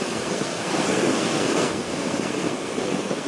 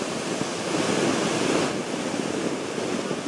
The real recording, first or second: second